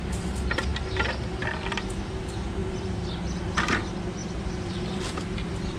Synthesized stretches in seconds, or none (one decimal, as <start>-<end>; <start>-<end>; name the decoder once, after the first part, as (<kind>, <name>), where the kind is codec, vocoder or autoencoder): 2.6-3.4 (vocoder, BigVGAN v2)